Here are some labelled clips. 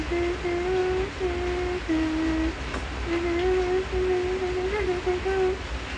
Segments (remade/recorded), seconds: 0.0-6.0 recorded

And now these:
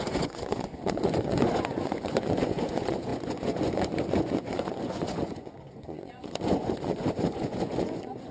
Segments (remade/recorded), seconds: 0.0-8.3 remade

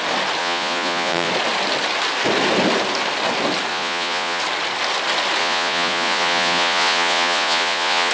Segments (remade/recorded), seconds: 0.0-0.4 recorded; 0.4-1.3 remade; 1.3-3.7 recorded; 3.7-4.4 remade; 4.4-5.4 recorded; 5.4-8.1 remade

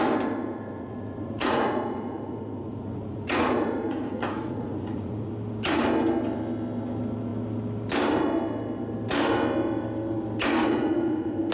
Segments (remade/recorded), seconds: 0.0-0.4 recorded; 0.4-5.3 remade; 5.3-10.6 recorded; 10.6-11.5 remade

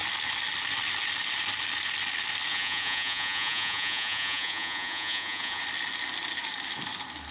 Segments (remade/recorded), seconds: 0.0-2.5 recorded; 2.5-5.6 remade; 5.6-7.3 recorded

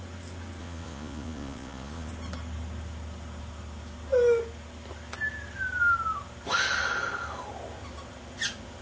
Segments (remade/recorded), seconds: 0.0-0.6 recorded; 0.6-2.1 remade; 2.1-8.8 recorded

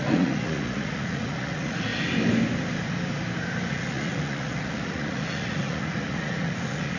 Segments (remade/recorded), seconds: 0.0-1.9 remade; 1.9-3.7 recorded; 3.7-7.0 remade

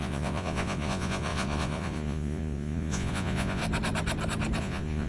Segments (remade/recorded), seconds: 0.0-3.6 remade; 3.6-4.6 recorded; 4.6-5.1 remade